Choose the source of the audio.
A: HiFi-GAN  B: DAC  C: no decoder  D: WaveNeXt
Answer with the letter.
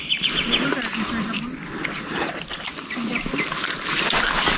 C